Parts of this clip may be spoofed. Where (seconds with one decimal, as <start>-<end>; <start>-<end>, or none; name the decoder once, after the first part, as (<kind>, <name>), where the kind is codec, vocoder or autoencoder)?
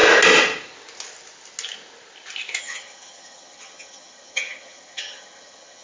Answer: 2.6-5.8 (vocoder, HiFi-GAN)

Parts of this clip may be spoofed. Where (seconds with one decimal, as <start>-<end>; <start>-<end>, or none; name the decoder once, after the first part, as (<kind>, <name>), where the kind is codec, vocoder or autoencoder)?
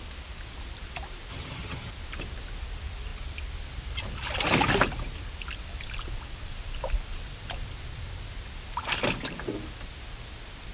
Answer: 1.3-1.9 (vocoder, HiFi-GAN)